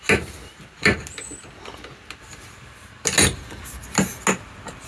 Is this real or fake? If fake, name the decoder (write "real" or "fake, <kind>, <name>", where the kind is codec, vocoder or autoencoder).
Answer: real